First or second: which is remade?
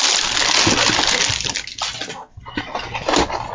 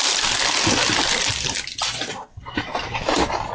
second